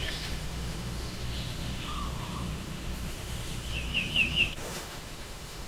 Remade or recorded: remade